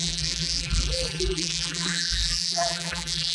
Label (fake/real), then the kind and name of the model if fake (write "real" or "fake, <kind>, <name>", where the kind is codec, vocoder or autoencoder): fake, vocoder, BigVGAN v2